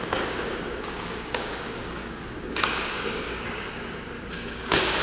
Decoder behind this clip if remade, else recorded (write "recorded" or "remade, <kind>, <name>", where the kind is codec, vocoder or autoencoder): remade, codec, DAC